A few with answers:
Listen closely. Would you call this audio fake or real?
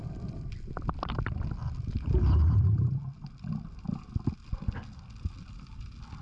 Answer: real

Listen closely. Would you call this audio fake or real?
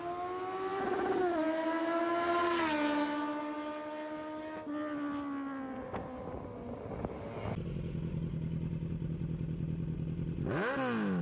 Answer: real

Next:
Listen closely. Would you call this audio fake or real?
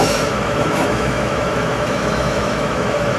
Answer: fake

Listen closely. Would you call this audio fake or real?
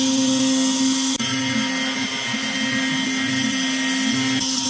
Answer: real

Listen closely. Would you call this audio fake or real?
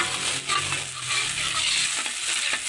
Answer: real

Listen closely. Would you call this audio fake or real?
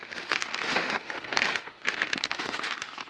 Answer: fake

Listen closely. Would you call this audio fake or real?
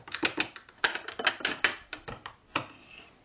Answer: real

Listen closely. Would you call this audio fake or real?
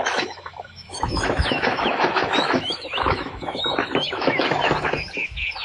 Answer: fake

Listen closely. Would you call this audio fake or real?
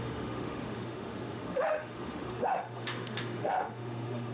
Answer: fake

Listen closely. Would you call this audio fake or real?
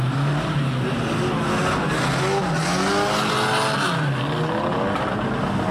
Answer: real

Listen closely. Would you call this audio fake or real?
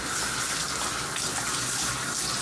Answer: real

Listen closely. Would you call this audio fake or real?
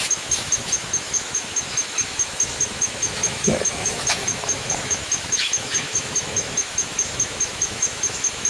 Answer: fake